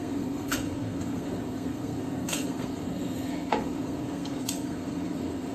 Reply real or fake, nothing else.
fake